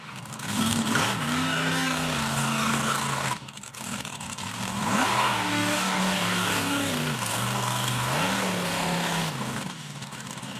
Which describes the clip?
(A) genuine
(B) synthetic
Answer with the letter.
B